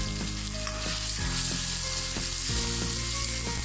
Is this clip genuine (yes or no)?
yes